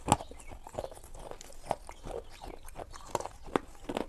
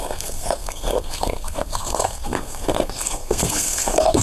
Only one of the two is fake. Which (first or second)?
second